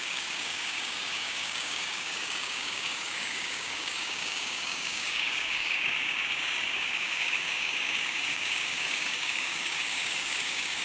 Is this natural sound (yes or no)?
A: no